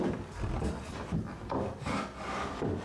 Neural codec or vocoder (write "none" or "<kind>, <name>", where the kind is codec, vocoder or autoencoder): none